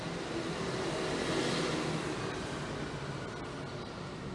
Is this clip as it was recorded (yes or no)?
yes